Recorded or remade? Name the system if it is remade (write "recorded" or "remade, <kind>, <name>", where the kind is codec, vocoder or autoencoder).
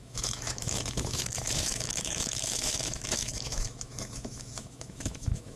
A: remade, autoencoder, DAC-VAE